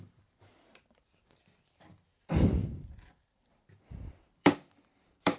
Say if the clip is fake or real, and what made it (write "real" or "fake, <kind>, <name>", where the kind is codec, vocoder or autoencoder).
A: fake, vocoder, BigVGAN v2